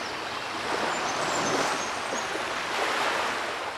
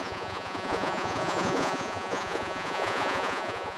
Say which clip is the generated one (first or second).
second